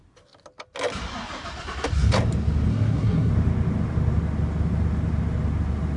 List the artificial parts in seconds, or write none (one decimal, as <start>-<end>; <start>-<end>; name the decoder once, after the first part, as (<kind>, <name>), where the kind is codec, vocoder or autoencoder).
2.7-3.3 (codec, SNAC)